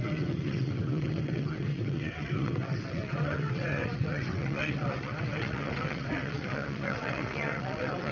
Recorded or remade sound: remade